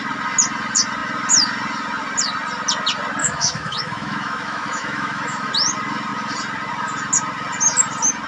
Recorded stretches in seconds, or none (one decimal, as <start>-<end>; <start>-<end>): 0.0-3.2; 5.5-8.3